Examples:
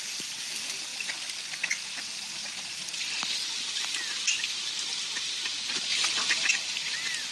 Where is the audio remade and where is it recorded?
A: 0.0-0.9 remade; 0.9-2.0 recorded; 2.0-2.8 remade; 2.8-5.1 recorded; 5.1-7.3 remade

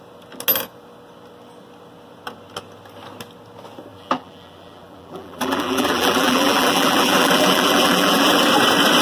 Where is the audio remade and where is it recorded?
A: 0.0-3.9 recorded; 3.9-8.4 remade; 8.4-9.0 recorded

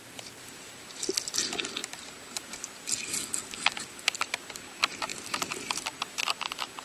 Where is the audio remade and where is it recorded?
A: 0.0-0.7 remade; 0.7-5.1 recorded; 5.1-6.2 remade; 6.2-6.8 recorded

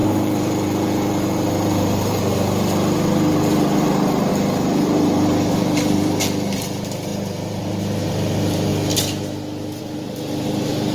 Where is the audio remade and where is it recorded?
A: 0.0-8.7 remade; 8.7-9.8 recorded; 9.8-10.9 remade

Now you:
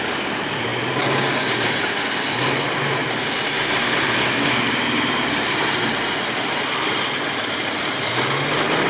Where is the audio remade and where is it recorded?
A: 0.0-3.0 recorded; 3.0-8.1 remade; 8.1-8.9 recorded

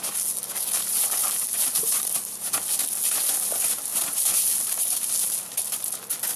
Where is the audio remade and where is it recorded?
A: 0.0-1.2 recorded; 1.2-2.5 remade; 2.5-3.9 recorded; 3.9-4.5 remade; 4.5-6.4 recorded

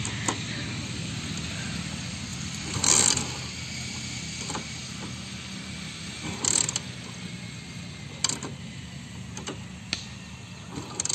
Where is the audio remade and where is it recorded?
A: 0.0-2.3 recorded; 2.3-3.5 remade; 3.5-11.1 recorded

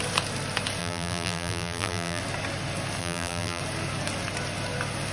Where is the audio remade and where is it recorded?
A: 0.0-0.8 recorded; 0.8-2.2 remade; 2.2-3.0 recorded; 3.0-3.6 remade; 3.6-5.1 recorded